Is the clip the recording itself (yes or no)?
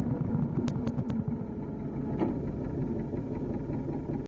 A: yes